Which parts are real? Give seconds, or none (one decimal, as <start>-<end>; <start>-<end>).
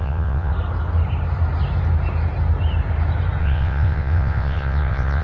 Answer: 0.5-3.4